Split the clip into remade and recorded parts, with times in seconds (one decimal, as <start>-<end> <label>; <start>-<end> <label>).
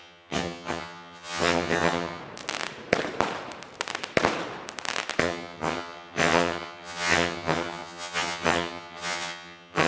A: 0.0-2.2 remade; 2.2-5.2 recorded; 5.2-9.9 remade